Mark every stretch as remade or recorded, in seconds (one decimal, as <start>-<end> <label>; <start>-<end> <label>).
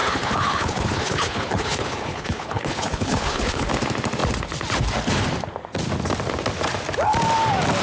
0.0-3.7 remade; 3.7-7.8 recorded